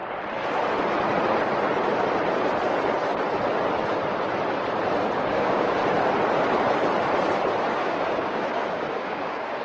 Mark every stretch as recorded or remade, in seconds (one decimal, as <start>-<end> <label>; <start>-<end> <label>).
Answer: 0.0-5.2 recorded; 5.2-5.8 remade; 5.8-7.7 recorded; 7.7-9.6 remade

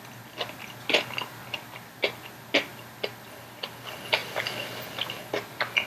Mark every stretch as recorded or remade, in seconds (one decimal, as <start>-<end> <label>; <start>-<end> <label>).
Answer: 0.0-5.9 recorded

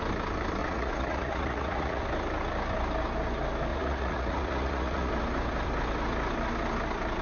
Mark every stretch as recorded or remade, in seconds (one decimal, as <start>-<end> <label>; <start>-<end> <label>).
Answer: 0.0-0.6 recorded; 0.6-2.0 remade; 2.0-3.7 recorded; 3.7-5.1 remade; 5.1-7.2 recorded

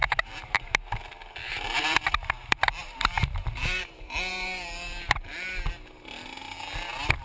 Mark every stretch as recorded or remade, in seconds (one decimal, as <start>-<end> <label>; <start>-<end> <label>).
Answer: 0.0-0.7 remade; 0.7-1.4 recorded; 1.4-5.7 remade; 5.7-7.2 recorded

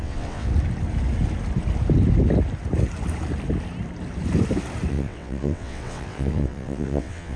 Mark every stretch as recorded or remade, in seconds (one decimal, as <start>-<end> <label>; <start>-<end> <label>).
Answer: 0.0-0.5 remade; 0.5-4.9 recorded; 4.9-7.4 remade

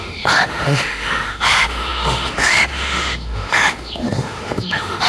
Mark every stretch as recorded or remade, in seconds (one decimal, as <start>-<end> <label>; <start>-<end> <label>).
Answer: 0.0-5.1 remade

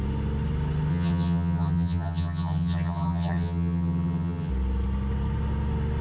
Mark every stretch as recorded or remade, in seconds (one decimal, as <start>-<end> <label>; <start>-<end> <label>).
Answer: 0.0-0.9 recorded; 0.9-4.5 remade; 4.5-6.0 recorded